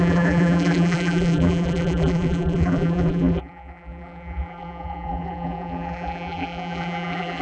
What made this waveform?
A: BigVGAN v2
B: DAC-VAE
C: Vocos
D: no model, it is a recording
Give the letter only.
A